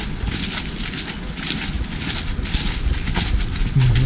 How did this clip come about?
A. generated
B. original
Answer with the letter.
B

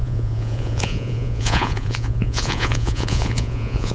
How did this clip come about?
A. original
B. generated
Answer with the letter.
B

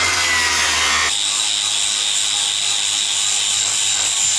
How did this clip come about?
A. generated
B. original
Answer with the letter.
B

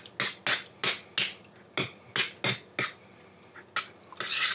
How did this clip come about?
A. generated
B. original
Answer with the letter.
B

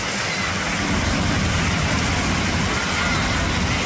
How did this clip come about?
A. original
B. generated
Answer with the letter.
A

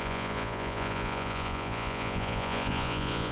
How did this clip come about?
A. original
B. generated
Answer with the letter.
B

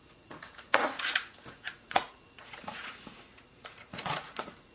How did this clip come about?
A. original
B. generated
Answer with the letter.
B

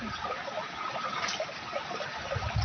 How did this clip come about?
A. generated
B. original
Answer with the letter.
B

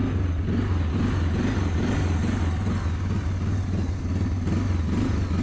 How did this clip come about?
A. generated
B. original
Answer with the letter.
B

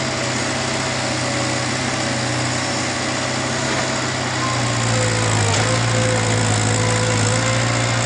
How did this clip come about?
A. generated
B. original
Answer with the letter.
B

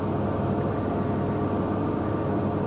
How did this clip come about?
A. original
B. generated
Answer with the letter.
A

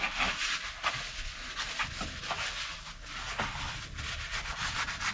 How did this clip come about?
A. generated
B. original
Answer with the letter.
B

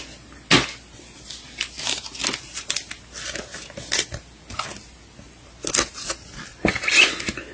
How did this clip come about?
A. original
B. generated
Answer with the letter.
A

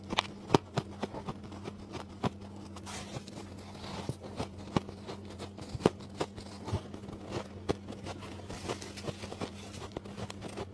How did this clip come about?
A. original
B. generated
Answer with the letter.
A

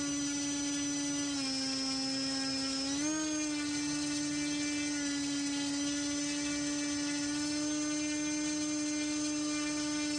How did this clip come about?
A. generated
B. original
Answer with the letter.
B